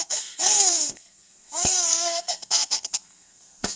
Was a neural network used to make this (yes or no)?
yes